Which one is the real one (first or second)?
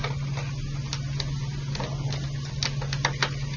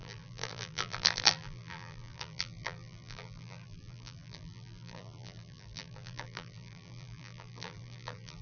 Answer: first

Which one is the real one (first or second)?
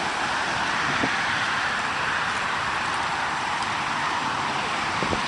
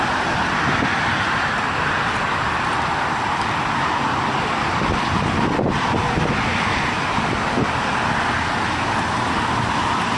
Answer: second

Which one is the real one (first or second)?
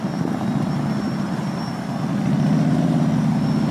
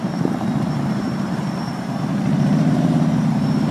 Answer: first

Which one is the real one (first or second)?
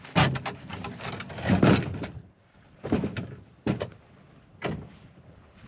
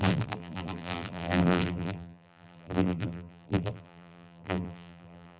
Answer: first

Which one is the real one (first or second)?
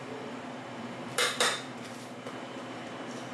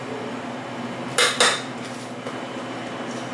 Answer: second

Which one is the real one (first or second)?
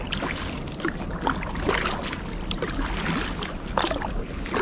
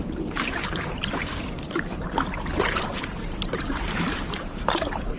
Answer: first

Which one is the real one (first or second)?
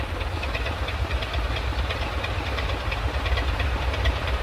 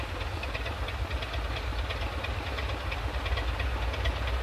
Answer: second